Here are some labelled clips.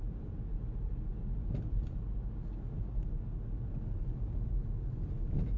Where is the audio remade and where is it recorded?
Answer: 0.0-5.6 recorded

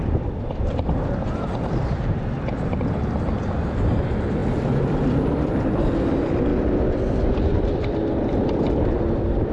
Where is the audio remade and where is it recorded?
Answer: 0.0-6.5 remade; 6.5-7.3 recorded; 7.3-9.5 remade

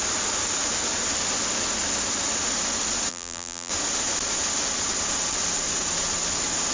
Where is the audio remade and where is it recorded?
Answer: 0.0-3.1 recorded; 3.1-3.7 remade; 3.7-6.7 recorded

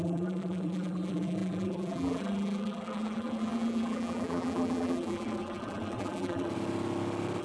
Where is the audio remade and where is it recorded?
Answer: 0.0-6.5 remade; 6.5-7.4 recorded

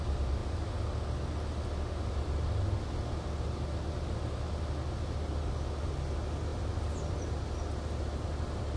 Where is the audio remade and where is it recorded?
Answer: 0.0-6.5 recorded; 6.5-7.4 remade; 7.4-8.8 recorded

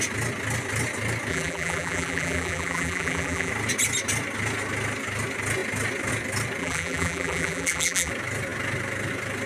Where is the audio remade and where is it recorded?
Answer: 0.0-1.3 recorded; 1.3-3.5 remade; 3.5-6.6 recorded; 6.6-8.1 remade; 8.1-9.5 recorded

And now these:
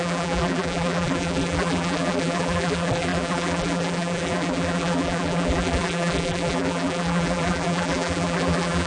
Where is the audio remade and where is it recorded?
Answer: 0.0-8.9 remade